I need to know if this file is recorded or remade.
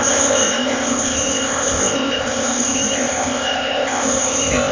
remade